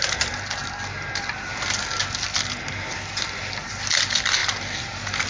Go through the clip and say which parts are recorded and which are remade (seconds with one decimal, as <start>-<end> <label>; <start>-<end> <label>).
0.0-5.3 recorded